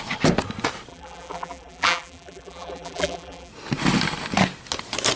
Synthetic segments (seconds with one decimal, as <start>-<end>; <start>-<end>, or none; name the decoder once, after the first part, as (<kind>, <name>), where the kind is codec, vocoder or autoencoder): 0.9-3.5 (vocoder, BigVGAN v2)